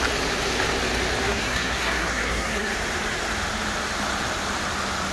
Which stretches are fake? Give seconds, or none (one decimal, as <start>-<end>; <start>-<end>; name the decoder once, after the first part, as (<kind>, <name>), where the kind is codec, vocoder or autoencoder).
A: 1.2-2.7 (codec, SNAC)